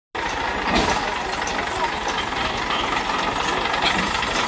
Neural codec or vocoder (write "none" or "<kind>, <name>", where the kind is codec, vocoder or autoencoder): none